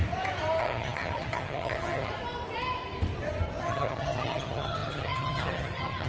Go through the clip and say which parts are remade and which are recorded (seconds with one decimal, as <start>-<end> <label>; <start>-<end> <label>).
0.0-0.6 recorded; 0.6-2.1 remade; 2.1-3.6 recorded; 3.6-6.1 remade